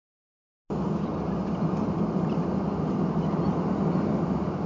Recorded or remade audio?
recorded